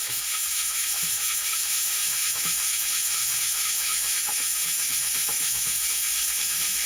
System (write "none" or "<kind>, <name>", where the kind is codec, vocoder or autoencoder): autoencoder, DAC-VAE